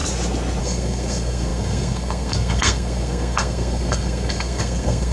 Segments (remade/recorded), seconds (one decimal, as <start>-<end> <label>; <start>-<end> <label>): 0.0-0.6 recorded; 0.6-5.1 remade